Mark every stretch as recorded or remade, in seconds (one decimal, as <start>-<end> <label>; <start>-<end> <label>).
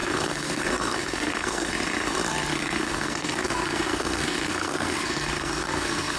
0.0-1.7 remade; 1.7-2.5 recorded; 2.5-6.2 remade